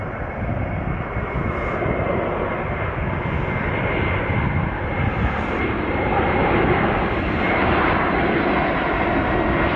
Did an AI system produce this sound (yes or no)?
no